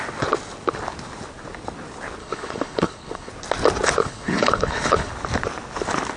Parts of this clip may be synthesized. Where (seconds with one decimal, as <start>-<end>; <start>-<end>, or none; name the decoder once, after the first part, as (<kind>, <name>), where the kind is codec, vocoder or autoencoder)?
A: 2.2-3.3 (codec, HILCodec); 4.0-5.1